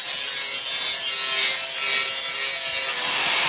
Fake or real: real